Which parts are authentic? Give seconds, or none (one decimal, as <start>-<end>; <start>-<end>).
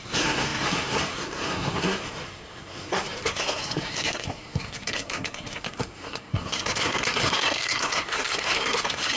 none